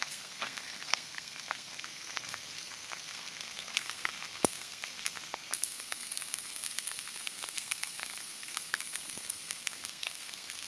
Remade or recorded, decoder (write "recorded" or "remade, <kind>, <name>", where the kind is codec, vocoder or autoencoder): remade, codec, SNAC